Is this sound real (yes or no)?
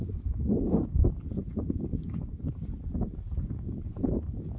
yes